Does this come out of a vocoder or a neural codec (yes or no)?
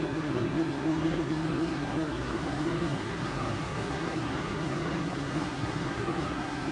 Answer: yes